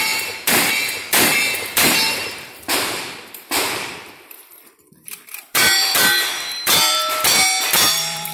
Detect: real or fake fake